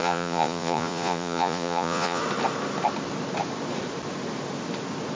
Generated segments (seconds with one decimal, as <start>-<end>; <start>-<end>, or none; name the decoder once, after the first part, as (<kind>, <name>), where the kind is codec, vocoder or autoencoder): 0.0-2.2 (vocoder, Vocos)